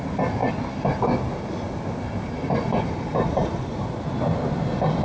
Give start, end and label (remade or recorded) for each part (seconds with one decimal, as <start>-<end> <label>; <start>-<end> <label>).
0.0-5.0 recorded